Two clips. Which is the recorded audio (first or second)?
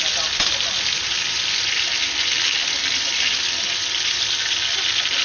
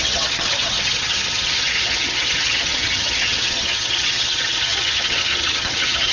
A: first